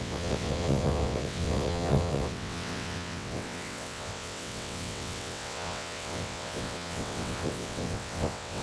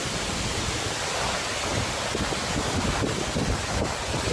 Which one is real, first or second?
second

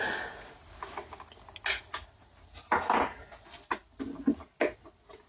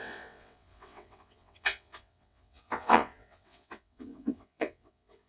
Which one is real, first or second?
first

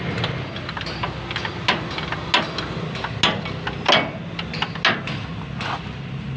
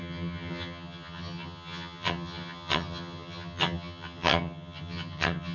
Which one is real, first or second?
first